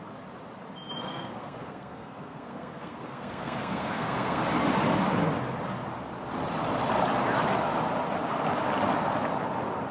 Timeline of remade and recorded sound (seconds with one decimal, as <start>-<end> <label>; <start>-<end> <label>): 0.0-1.1 recorded; 1.1-4.4 remade; 4.4-9.9 recorded